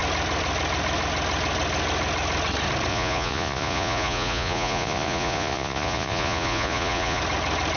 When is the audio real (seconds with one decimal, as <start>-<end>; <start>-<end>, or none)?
0.0-2.9; 7.2-7.8